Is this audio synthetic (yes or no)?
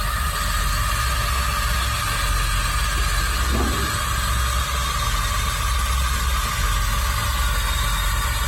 no